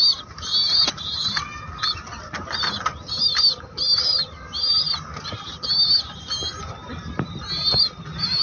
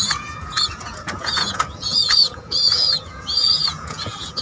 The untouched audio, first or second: first